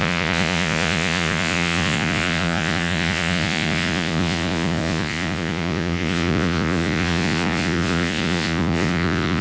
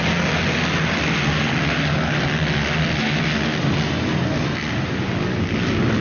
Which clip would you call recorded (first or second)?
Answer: second